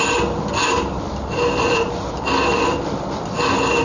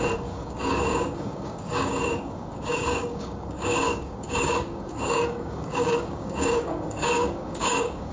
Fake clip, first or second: second